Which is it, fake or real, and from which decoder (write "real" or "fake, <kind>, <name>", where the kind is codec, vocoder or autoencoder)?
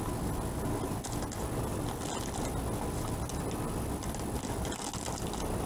real